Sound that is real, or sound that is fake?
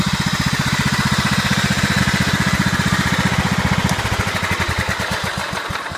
real